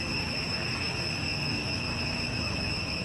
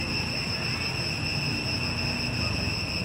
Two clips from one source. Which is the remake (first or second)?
first